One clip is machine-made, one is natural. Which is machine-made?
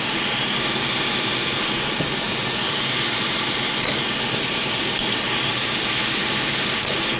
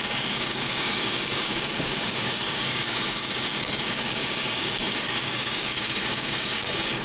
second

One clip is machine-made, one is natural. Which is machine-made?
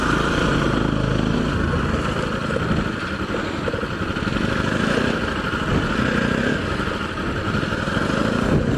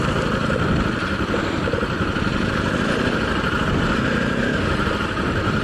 second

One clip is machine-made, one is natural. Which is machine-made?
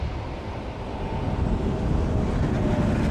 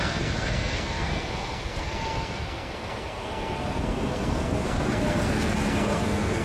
second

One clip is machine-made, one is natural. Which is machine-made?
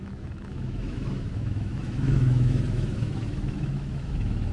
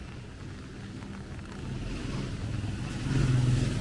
first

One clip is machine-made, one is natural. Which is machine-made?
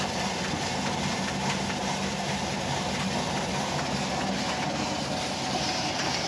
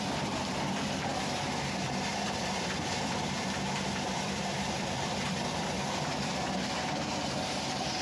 second